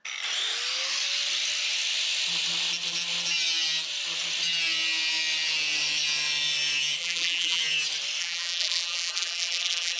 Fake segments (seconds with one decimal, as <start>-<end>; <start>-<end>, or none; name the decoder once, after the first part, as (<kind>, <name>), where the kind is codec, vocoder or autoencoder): 7.0-7.6 (vocoder, BigVGAN v2); 8.2-10.0